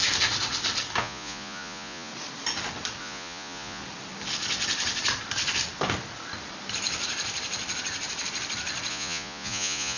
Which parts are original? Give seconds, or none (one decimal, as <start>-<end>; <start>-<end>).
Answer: 0.0-1.0; 2.1-3.0; 3.8-8.9